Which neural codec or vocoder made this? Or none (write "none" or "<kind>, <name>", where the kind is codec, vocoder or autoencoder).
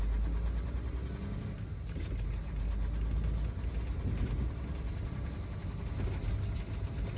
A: none